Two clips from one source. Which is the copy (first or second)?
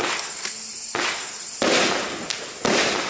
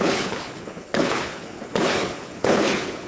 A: second